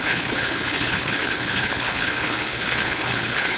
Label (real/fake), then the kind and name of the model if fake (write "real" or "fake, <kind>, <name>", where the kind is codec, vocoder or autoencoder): fake, codec, HILCodec